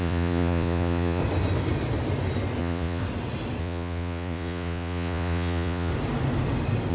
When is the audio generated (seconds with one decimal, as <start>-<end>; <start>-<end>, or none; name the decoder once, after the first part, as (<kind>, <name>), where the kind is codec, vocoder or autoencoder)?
0.0-1.2 (vocoder, Vocos); 2.6-3.0; 3.6-5.9